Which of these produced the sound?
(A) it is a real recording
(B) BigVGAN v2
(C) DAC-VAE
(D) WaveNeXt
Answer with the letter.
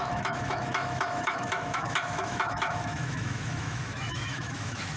C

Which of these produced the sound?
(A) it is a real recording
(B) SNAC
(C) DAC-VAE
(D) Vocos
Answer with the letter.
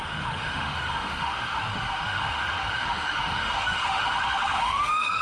C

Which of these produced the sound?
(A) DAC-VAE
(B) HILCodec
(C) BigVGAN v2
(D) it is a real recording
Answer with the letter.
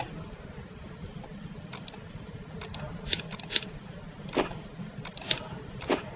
D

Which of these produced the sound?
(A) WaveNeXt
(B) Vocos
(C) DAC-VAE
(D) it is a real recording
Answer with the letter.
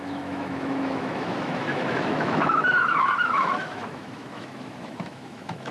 C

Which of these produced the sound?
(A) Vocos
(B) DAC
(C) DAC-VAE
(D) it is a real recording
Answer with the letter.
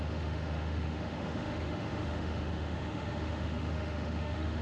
C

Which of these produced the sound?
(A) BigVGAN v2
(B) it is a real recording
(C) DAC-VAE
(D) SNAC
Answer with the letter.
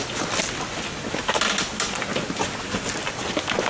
B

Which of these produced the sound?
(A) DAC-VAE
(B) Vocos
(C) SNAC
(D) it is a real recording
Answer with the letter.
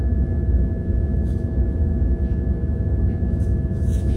A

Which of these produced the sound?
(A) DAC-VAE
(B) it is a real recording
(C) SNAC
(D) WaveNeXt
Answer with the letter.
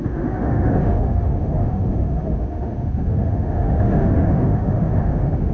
A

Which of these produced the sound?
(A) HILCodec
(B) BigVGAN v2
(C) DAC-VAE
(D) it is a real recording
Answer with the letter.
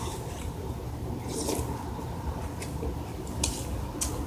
D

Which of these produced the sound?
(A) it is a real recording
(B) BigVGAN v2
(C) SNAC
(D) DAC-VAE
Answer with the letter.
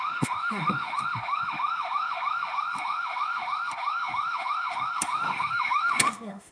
D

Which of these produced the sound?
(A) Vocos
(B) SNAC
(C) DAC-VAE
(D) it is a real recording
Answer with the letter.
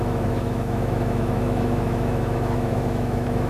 C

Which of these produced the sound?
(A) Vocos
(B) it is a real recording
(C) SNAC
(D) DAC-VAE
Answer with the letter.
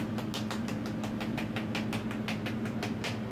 B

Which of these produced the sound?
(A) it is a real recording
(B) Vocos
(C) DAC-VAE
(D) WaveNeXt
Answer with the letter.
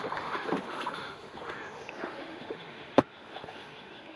C